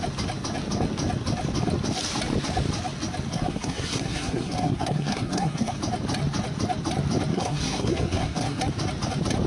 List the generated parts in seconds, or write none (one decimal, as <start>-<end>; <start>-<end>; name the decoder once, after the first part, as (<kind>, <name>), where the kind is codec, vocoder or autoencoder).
3.3-5.8 (codec, SNAC); 7.3-8.6